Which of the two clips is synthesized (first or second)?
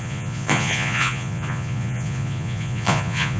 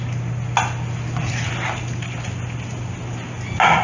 first